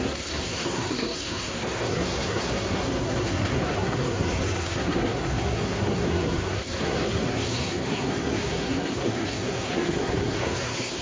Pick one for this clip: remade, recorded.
remade